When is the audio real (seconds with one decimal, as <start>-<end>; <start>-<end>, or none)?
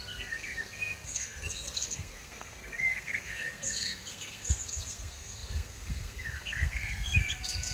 none